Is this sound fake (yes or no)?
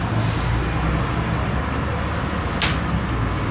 no